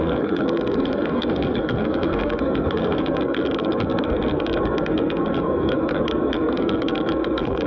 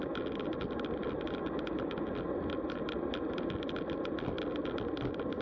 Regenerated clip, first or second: first